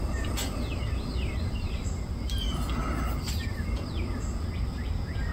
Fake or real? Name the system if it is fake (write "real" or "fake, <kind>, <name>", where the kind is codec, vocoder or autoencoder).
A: real